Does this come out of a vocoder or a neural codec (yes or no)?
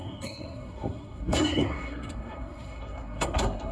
yes